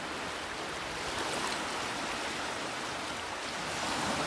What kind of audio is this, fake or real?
real